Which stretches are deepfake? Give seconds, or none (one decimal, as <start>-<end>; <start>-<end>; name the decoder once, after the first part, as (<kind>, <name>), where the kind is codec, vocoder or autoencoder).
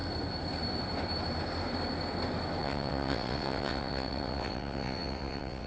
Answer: 2.6-5.7 (vocoder, WaveNeXt)